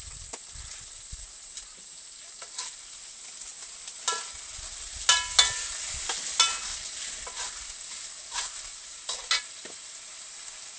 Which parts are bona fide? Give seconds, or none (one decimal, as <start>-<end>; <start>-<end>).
0.0-10.8